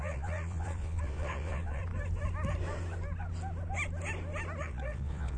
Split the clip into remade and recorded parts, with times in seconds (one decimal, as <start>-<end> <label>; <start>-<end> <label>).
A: 0.0-1.8 remade; 1.8-4.6 recorded; 4.6-5.4 remade